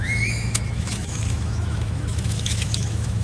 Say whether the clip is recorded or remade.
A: remade